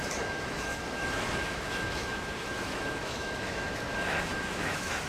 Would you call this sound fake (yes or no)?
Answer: yes